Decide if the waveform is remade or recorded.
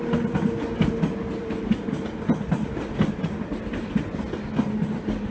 recorded